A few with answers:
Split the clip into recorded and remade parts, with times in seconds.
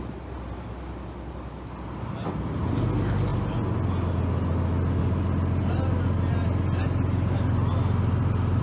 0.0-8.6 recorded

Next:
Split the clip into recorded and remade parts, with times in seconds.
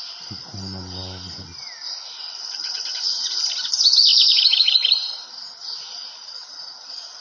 0.0-4.1 recorded; 4.1-5.3 remade; 5.3-7.2 recorded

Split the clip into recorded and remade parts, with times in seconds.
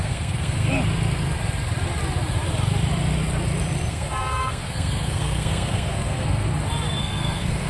0.0-0.7 remade; 0.7-3.9 recorded; 3.9-6.5 remade; 6.5-7.0 recorded; 7.0-7.7 remade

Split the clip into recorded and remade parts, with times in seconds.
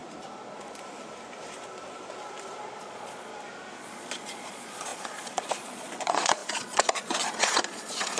0.0-2.8 recorded; 2.8-3.3 remade; 3.3-3.8 recorded; 3.8-8.2 remade